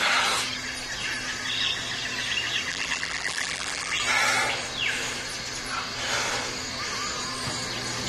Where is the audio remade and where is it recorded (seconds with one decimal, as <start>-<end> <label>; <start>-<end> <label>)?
0.0-2.7 recorded; 2.7-4.0 remade; 4.0-8.1 recorded